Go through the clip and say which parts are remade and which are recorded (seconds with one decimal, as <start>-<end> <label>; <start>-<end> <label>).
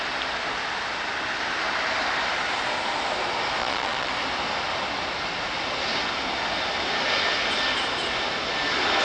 0.0-3.6 recorded; 3.6-4.1 remade; 4.1-9.0 recorded